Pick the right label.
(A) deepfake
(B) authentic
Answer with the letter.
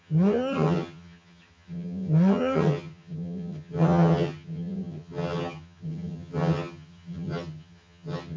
A